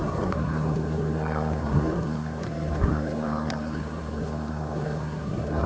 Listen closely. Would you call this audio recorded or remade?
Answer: remade